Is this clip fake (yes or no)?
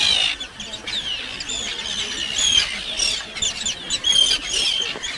no